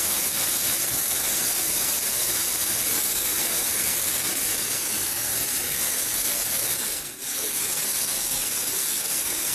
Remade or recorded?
remade